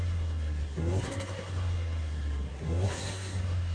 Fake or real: fake